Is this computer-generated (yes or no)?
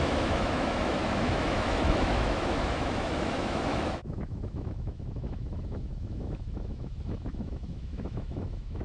yes